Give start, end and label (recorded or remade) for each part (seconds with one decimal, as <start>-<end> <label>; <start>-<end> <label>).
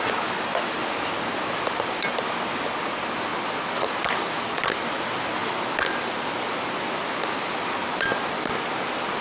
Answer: 0.0-9.2 recorded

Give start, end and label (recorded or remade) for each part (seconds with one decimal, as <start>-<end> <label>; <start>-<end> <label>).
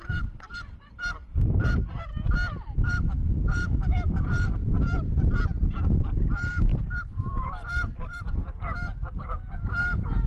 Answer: 0.0-2.1 remade; 2.1-2.8 recorded; 2.8-4.6 remade; 4.6-5.8 recorded; 5.8-10.3 remade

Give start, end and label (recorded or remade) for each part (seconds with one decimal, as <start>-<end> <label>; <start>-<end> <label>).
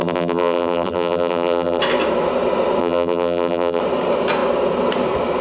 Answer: 0.0-1.8 remade; 1.8-2.8 recorded; 2.8-3.8 remade; 3.8-5.4 recorded